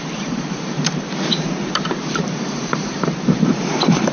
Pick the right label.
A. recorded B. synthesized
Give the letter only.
B